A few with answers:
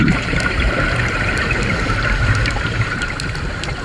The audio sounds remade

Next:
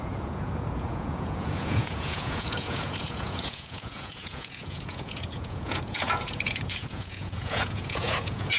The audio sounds remade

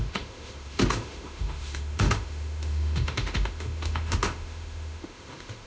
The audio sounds remade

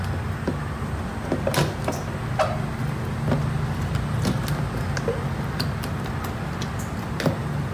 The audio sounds recorded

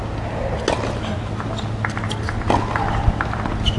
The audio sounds recorded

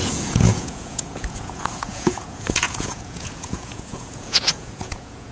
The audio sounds remade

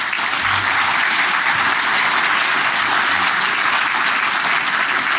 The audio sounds recorded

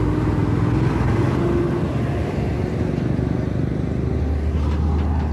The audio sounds recorded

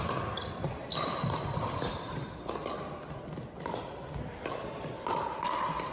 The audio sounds recorded